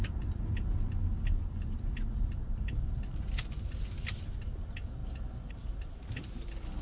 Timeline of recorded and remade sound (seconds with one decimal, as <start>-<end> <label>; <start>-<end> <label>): 0.0-5.0 remade; 5.0-5.5 recorded; 5.5-6.8 remade